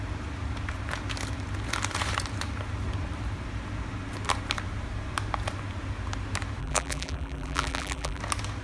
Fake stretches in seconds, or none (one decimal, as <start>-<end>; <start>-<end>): 6.6-8.2